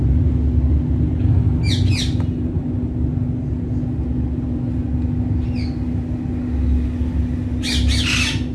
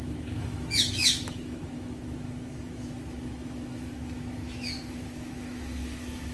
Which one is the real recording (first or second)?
first